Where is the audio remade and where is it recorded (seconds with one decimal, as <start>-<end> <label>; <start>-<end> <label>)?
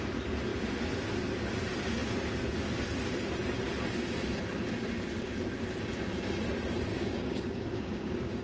0.0-6.9 recorded; 6.9-8.4 remade